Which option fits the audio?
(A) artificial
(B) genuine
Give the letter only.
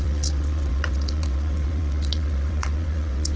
A